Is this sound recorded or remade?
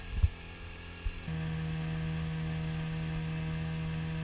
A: recorded